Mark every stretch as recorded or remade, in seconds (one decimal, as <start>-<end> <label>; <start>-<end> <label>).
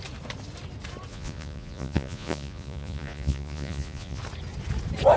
0.0-1.1 recorded; 1.1-4.2 remade; 4.2-5.2 recorded